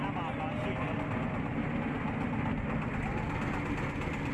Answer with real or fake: real